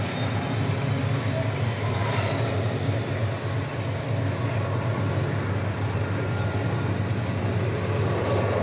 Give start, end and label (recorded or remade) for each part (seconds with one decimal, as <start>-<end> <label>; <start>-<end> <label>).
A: 0.0-8.6 recorded